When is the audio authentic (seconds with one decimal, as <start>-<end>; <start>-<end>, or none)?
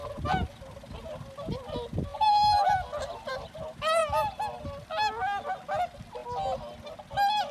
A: 0.0-7.5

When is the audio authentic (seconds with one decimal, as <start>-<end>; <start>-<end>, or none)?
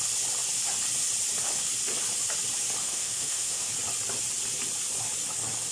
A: 0.0-2.8; 3.7-5.7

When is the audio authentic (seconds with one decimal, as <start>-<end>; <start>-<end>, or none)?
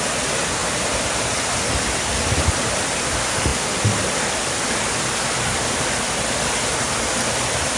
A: 0.0-7.8